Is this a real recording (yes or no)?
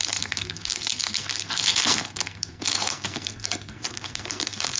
no